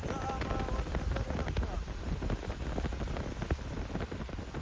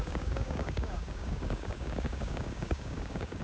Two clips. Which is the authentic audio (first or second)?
first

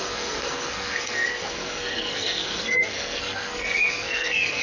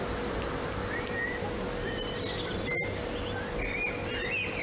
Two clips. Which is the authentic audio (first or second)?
second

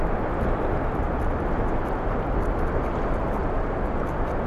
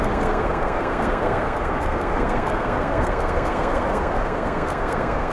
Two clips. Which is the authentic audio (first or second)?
first